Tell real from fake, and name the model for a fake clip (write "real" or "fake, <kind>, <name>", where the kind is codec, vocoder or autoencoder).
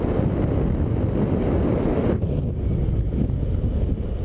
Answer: real